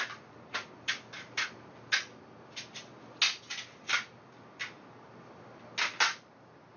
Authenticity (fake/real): real